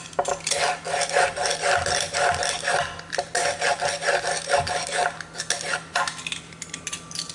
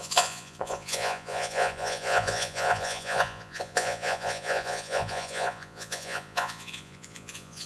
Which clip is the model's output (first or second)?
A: second